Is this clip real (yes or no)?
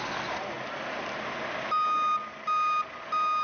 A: yes